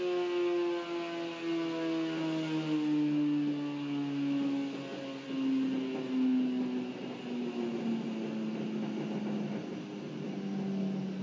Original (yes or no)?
yes